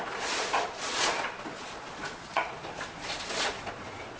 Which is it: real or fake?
fake